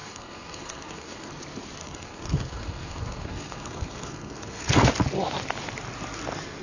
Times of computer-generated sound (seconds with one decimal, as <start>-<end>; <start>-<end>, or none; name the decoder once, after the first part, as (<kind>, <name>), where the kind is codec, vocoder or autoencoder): 0.0-1.3 (codec, SNAC); 1.8-4.9